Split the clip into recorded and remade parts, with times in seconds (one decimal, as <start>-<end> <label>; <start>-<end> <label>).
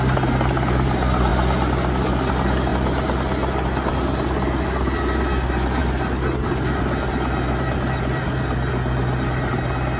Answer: 0.0-10.0 recorded